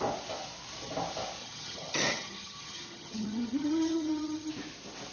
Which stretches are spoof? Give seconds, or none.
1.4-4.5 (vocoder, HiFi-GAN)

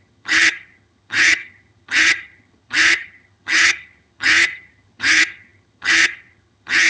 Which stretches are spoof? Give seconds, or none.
0.0-6.9 (vocoder, HiFi-GAN)

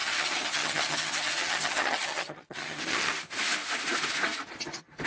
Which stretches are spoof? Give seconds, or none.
0.0-3.1 (vocoder, HiFi-GAN)

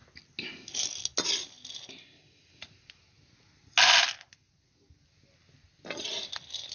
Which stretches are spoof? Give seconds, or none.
none

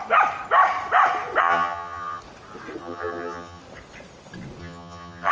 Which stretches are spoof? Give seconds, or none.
1.4-2.2 (vocoder, HiFi-GAN); 2.8-3.6; 4.6-5.3